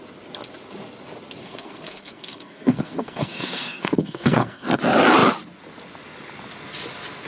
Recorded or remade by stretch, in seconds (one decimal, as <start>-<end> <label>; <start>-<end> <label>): 0.0-1.4 recorded; 1.4-4.8 remade; 4.8-7.3 recorded